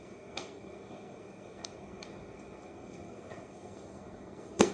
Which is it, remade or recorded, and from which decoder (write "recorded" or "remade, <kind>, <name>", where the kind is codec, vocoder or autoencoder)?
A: remade, codec, SNAC